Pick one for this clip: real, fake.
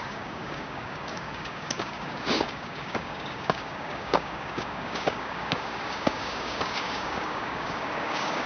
fake